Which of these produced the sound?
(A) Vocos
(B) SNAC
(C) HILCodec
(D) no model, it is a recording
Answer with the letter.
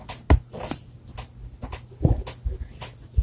D